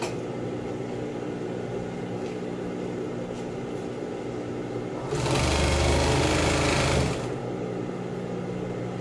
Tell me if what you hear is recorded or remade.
recorded